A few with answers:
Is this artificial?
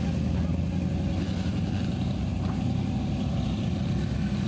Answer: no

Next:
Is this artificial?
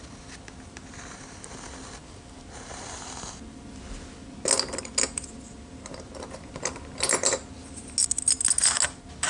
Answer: no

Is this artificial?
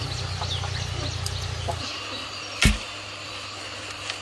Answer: no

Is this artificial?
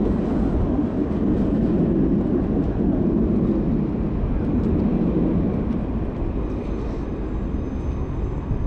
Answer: no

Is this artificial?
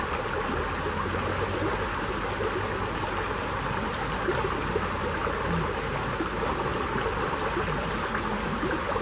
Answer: no